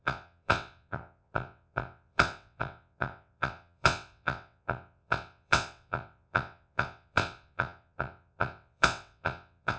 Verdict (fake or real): fake